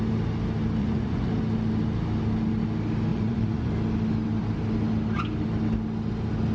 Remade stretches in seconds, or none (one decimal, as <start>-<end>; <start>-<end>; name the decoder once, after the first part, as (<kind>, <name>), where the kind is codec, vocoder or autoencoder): 0.8-1.3 (vocoder, Vocos); 3.1-3.7